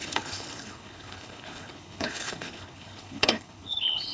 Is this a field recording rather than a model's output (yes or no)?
no